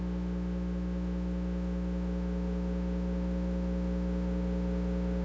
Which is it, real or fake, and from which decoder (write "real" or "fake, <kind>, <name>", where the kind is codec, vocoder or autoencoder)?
fake, autoencoder, DAC-VAE